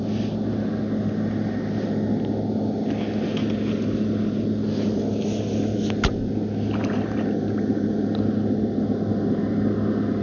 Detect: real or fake real